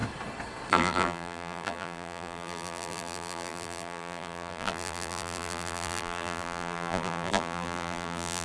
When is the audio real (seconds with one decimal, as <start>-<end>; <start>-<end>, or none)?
0.0-0.7

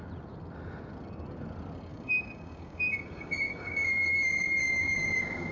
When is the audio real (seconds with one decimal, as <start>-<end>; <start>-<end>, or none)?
0.0-1.9

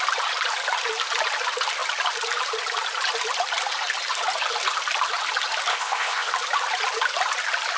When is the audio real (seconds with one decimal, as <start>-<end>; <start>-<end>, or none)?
0.0-5.7; 6.3-7.8

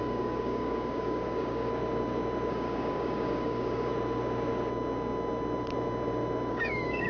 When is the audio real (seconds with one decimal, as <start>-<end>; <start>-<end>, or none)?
1.7-2.5; 3.9-6.5

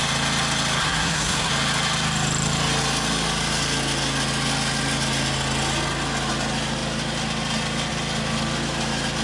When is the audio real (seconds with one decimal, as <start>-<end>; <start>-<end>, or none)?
0.0-0.8; 1.5-9.2

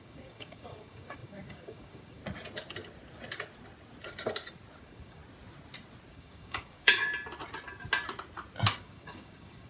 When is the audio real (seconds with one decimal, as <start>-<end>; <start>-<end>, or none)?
2.2-4.8; 5.2-6.1; 7.1-8.8

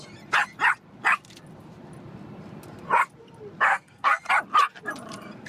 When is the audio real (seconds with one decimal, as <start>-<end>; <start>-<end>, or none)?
0.0-3.7; 4.3-5.5

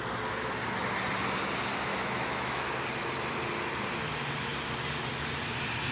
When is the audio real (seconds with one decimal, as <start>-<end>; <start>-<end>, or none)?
0.0-1.9; 2.7-5.9